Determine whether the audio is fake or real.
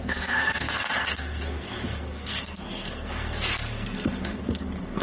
fake